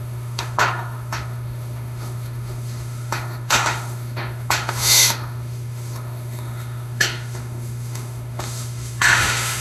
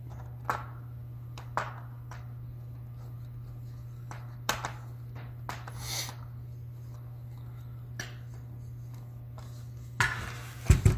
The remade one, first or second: first